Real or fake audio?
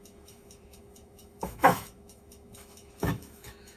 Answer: fake